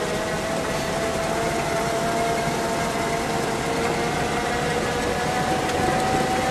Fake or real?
real